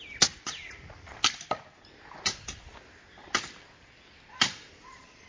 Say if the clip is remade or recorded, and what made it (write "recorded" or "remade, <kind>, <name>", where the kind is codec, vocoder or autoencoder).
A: recorded